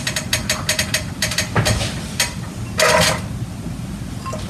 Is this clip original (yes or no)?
yes